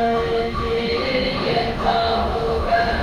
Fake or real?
fake